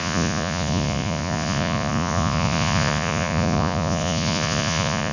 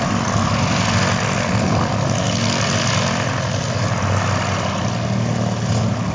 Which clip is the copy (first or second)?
first